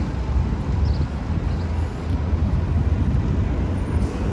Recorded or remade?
recorded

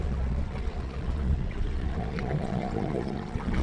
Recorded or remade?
remade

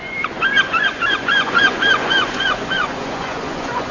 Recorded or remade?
remade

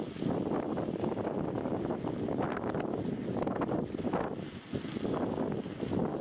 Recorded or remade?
recorded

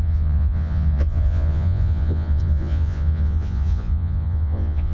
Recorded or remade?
remade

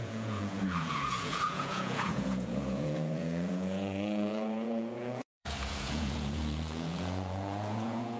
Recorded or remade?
remade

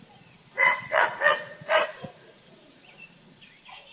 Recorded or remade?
remade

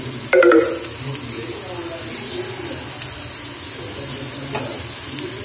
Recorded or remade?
recorded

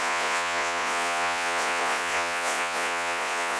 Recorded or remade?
remade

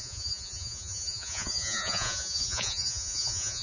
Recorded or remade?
remade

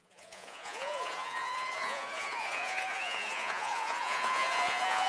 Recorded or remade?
remade